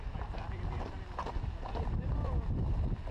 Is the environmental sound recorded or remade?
recorded